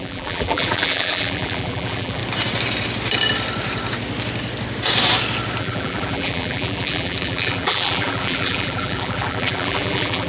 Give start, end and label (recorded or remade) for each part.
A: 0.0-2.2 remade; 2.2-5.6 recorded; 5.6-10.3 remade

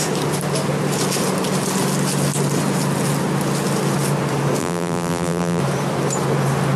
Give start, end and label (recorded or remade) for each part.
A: 0.0-4.6 recorded; 4.6-5.6 remade; 5.6-6.8 recorded

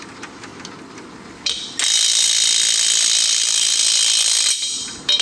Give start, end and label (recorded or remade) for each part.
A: 0.0-0.5 remade; 0.5-3.3 recorded; 3.3-3.8 remade; 3.8-4.6 recorded; 4.6-5.2 remade